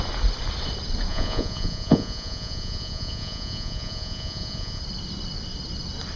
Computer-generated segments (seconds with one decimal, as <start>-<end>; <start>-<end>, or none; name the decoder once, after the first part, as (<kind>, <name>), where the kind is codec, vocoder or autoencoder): 1.1-4.8 (vocoder, Vocos)